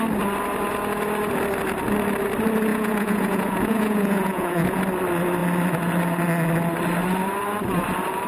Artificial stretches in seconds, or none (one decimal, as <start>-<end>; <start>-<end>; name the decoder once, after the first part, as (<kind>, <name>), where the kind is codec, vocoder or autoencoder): 2.7-4.8 (vocoder, Vocos)

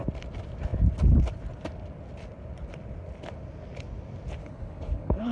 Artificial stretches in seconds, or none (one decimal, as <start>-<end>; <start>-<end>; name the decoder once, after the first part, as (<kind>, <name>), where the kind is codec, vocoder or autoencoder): 4.4-5.3 (codec, HILCodec)

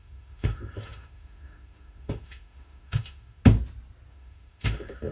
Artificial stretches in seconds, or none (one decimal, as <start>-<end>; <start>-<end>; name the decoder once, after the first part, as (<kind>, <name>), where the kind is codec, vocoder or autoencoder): 0.0-3.4 (autoencoder, DAC-VAE); 4.1-5.1